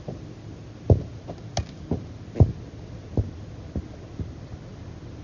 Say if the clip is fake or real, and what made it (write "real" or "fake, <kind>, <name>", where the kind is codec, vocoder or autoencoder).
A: real